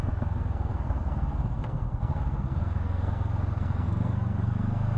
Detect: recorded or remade remade